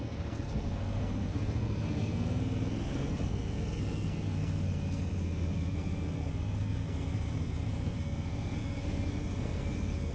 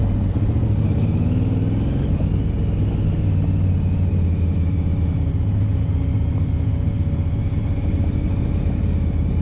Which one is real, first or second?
second